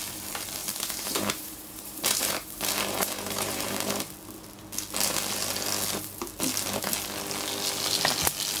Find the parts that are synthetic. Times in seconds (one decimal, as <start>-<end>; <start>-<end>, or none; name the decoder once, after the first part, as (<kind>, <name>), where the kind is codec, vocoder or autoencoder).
0.6-4.1 (vocoder, BigVGAN v2)